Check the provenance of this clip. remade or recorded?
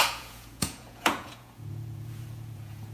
remade